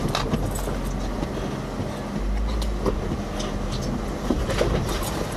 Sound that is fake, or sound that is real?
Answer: real